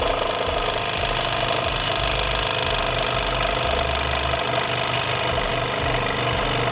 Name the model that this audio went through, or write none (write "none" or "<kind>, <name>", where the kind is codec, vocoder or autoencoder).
none